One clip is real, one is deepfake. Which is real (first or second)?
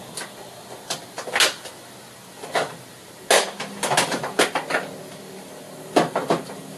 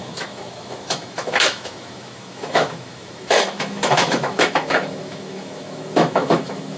first